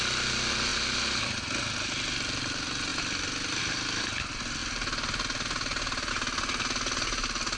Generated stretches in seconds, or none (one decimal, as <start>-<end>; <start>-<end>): none